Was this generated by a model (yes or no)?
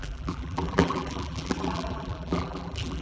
yes